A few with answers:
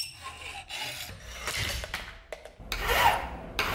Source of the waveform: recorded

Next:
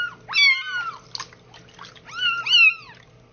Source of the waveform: recorded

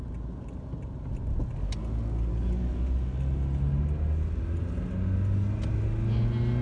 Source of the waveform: recorded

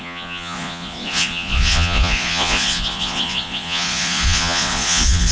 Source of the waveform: remade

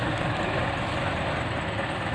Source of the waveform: recorded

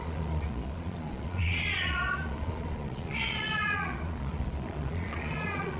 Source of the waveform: remade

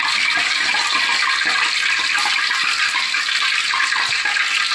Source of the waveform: recorded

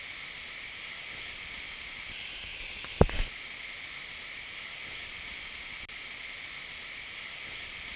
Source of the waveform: recorded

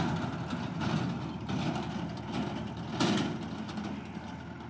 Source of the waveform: recorded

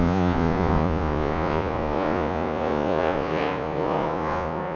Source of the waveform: remade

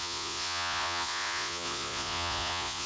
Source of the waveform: remade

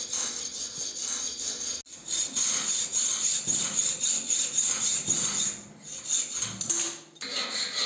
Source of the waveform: recorded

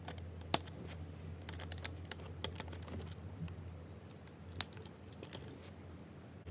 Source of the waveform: recorded